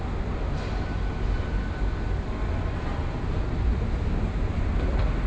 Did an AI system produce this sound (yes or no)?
no